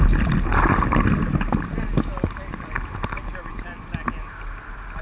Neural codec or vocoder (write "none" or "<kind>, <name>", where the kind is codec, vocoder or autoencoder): none